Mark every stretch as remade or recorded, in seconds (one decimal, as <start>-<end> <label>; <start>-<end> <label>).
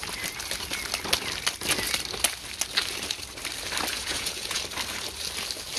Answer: 0.0-3.9 recorded; 3.9-4.6 remade; 4.6-5.8 recorded